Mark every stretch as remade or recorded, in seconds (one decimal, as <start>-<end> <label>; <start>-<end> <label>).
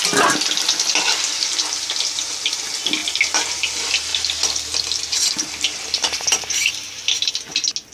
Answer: 0.0-4.1 recorded; 4.1-7.3 remade; 7.3-7.9 recorded